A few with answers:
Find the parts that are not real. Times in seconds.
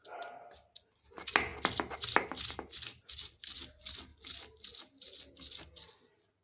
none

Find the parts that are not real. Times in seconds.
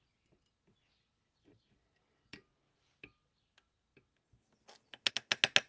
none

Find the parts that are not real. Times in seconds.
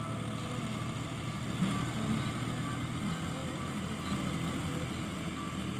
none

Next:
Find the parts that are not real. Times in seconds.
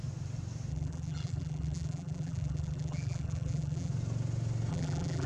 0.7-3.9 (vocoder, BigVGAN v2); 4.7-5.3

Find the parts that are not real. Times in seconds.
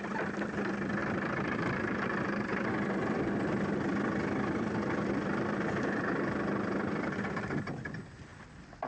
1.0-2.7 (vocoder, BigVGAN v2)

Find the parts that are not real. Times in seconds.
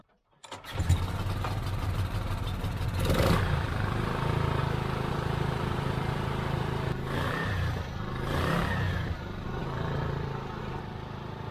0.0-4.6 (vocoder, BigVGAN v2); 5.1-9.6; 10.6-11.5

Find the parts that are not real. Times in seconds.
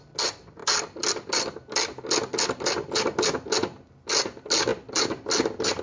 none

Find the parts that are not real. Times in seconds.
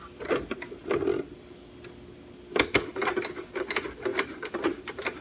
4.1-5.2 (vocoder, BigVGAN v2)